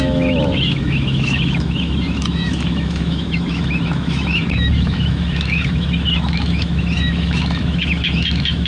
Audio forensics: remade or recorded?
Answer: remade